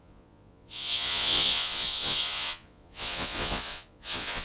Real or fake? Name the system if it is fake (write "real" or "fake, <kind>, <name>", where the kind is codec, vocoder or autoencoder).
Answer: fake, vocoder, Vocos